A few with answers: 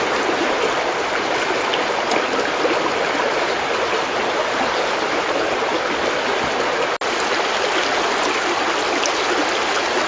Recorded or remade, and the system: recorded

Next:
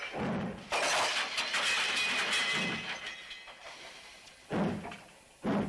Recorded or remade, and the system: recorded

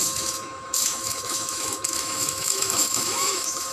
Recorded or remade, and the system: remade, autoencoder, DAC-VAE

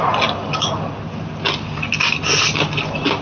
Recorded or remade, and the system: recorded